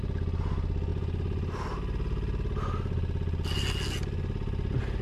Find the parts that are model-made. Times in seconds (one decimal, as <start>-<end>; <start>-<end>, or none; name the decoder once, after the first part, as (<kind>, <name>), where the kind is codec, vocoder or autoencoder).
none

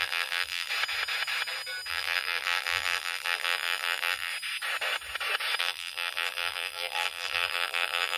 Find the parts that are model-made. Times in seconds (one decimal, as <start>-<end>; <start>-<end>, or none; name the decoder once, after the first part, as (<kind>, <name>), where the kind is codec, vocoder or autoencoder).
0.0-0.7 (vocoder, BigVGAN v2); 1.9-4.3; 5.6-8.2

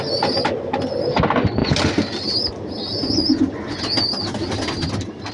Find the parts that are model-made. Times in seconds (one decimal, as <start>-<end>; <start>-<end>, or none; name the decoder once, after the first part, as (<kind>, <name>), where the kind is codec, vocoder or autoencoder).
none

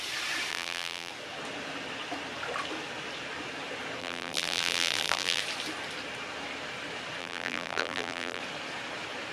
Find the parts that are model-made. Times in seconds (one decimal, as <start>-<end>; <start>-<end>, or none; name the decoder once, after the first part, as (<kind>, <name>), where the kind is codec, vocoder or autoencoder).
0.5-1.1 (vocoder, BigVGAN v2); 4.0-5.4; 7.2-8.4

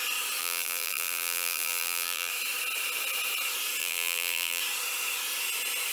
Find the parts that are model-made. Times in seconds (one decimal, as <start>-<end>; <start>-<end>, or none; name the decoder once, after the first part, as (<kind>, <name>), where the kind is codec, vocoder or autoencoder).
0.4-2.3 (vocoder, BigVGAN v2); 3.8-4.6

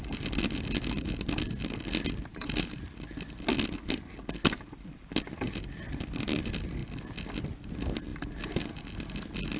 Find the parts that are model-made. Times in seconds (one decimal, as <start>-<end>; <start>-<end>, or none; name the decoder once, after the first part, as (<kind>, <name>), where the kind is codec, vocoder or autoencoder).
2.3-2.9 (vocoder, BigVGAN v2)

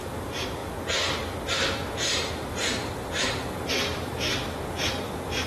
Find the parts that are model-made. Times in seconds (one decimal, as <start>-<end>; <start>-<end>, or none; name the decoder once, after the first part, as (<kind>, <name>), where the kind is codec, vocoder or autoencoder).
none

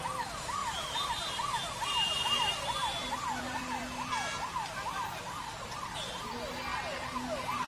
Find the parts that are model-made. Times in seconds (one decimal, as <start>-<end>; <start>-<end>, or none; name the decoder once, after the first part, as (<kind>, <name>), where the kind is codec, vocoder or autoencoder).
0.6-5.2 (vocoder, BigVGAN v2)